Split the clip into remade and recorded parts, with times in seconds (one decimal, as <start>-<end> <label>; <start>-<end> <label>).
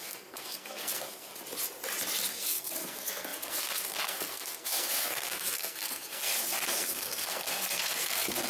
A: 0.0-1.3 remade; 1.3-2.3 recorded; 2.3-8.5 remade